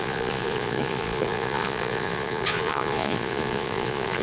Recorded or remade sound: remade